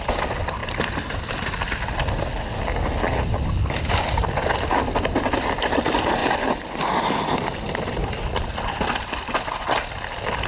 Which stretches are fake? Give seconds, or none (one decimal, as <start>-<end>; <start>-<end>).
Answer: none